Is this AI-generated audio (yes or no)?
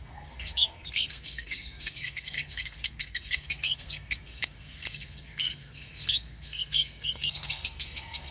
yes